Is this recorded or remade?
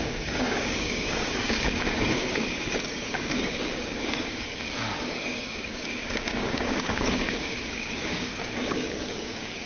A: remade